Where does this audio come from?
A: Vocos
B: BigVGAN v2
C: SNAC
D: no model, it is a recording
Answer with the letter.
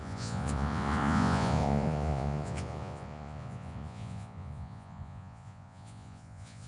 A